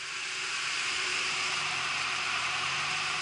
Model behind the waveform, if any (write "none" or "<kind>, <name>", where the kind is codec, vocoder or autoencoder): vocoder, BigVGAN v2